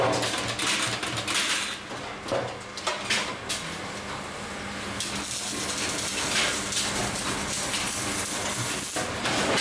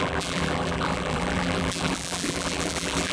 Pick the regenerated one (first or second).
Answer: second